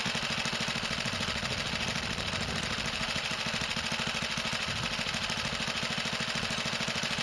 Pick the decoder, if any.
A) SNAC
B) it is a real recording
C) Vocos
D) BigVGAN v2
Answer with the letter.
B